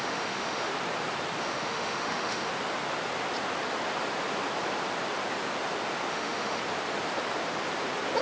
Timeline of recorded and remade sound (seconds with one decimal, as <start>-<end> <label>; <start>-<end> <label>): 0.0-0.7 remade; 0.7-1.4 recorded; 1.4-2.5 remade; 2.5-6.1 recorded; 6.1-6.6 remade; 6.6-8.2 recorded